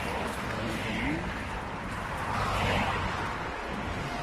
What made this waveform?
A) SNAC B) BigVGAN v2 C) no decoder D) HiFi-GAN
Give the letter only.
C